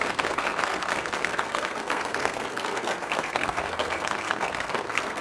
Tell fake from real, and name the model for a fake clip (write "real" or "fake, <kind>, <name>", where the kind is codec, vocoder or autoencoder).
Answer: fake, codec, SNAC